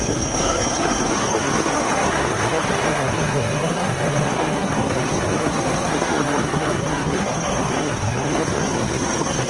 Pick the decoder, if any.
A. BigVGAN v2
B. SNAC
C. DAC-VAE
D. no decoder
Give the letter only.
B